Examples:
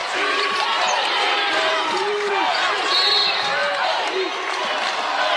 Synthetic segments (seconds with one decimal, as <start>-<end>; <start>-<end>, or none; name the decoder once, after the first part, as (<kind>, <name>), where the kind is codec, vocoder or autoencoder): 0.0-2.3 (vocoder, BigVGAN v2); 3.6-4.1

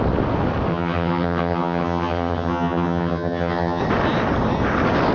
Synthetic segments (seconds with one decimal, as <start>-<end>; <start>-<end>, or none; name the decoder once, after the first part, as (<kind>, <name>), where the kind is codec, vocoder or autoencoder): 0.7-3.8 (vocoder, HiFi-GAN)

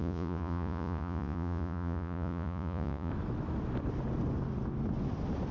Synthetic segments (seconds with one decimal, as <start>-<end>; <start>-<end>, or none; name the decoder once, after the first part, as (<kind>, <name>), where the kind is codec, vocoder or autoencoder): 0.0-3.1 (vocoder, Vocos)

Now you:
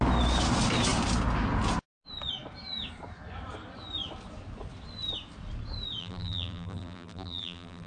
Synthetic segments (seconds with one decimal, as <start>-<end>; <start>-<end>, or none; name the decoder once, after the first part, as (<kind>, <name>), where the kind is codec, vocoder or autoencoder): 6.0-7.9 (vocoder, BigVGAN v2)

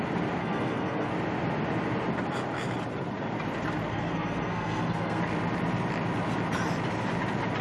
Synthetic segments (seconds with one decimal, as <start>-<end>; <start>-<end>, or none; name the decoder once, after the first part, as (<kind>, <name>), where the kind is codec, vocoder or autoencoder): 0.4-1.1 (codec, SNAC); 3.9-5.2

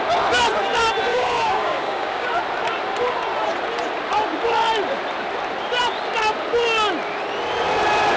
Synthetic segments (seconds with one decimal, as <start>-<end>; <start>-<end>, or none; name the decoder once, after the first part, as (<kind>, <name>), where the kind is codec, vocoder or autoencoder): 1.1-2.3 (codec, DAC)